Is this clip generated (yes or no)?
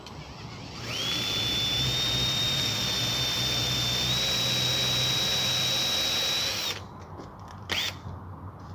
no